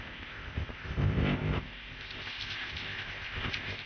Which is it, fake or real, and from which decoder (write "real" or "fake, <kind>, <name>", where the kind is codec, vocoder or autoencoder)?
fake, codec, ZipCodec